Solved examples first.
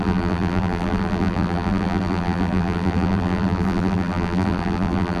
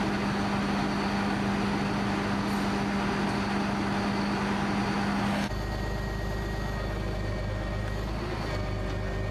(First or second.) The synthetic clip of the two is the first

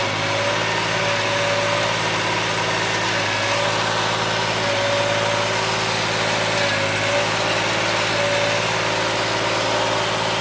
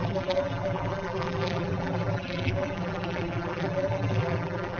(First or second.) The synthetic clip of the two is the second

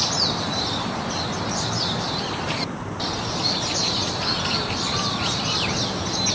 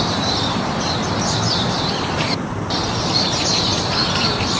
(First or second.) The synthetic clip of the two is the second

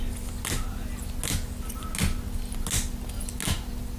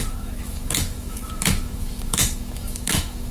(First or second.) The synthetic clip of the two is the second